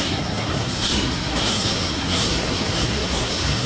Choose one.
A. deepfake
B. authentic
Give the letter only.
A